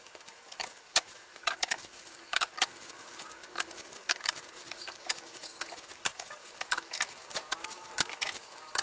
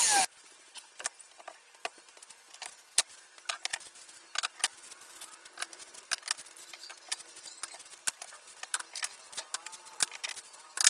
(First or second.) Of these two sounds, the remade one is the first